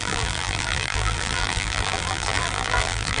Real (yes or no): no